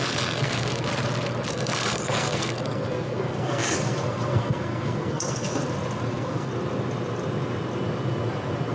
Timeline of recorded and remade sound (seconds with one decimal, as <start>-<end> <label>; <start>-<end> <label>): 0.0-0.9 remade; 0.9-1.5 recorded; 1.5-5.6 remade; 5.6-6.1 recorded; 6.1-6.5 remade; 6.5-8.7 recorded